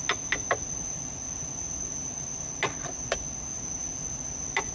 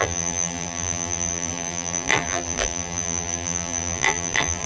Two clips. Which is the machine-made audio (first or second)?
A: second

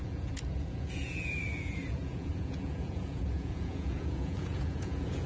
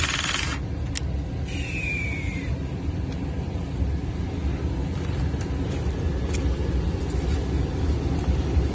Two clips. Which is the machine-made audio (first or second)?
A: first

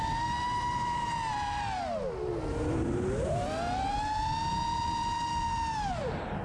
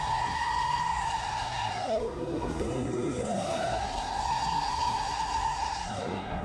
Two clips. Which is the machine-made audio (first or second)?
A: second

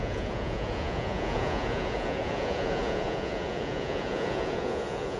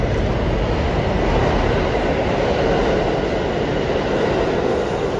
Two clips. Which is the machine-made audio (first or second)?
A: first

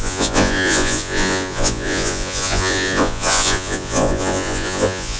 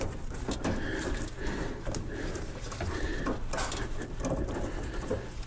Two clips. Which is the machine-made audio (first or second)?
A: first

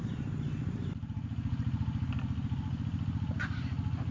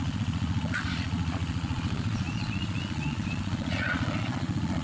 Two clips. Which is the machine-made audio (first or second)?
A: second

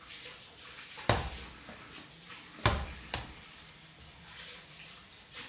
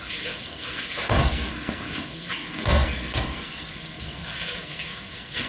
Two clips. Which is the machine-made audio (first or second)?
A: second